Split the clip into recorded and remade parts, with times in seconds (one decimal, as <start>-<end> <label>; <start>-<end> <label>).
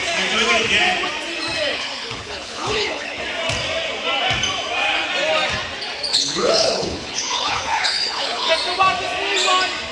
0.0-1.7 recorded; 1.7-3.2 remade; 3.2-6.1 recorded; 6.1-8.5 remade; 8.5-9.9 recorded